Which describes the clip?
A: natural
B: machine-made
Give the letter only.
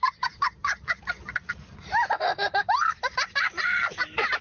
A